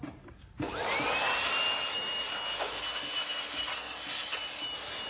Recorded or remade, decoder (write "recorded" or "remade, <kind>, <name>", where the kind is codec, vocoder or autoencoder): recorded